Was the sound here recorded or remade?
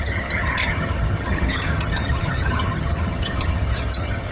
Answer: remade